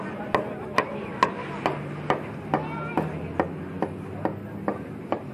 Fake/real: real